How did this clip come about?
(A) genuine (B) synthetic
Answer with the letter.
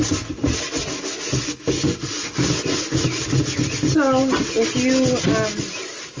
A